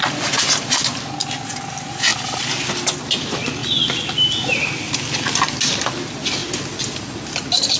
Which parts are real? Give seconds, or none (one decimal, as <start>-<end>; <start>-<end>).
0.0-7.8

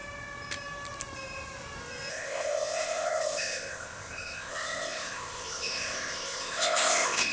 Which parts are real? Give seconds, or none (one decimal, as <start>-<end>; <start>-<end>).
0.0-2.1